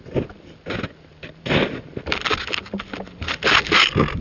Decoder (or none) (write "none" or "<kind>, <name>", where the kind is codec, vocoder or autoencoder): none